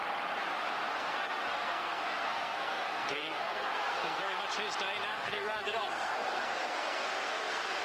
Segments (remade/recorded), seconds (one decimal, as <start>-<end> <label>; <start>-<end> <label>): 0.0-0.9 recorded; 0.9-4.4 remade; 4.4-5.1 recorded; 5.1-7.8 remade